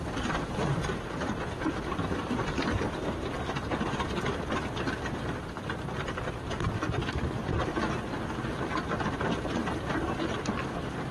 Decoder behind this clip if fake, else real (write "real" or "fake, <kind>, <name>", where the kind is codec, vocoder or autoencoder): fake, vocoder, BigVGAN v2